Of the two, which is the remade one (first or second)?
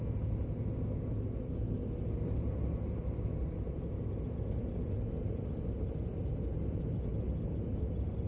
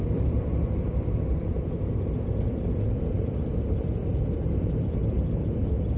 second